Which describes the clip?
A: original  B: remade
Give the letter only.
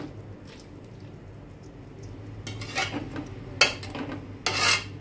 A